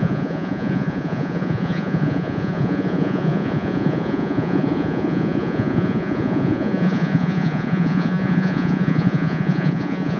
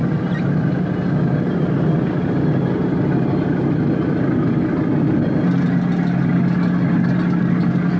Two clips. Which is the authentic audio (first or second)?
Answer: second